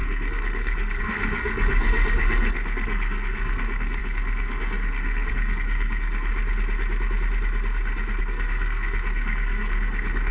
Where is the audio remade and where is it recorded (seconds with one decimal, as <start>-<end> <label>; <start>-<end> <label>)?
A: 0.0-6.3 remade; 6.3-8.2 recorded; 8.2-10.3 remade

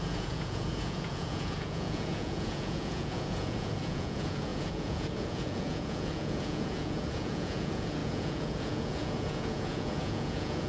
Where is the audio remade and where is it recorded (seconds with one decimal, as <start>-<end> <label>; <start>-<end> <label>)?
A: 0.0-10.7 remade

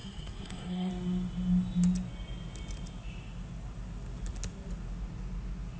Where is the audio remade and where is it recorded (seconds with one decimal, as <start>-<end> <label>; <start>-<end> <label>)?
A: 0.0-0.9 remade; 0.9-5.8 recorded

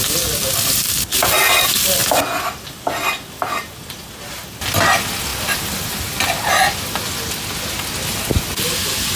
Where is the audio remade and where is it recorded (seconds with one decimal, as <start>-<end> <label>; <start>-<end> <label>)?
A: 0.0-9.2 recorded